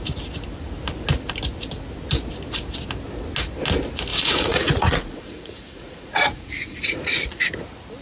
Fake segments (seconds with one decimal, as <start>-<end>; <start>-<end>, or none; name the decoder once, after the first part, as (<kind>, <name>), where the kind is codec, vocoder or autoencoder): 4.1-7.5 (vocoder, Vocos)